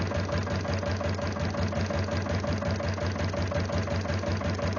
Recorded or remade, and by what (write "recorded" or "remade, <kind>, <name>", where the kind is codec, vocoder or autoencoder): recorded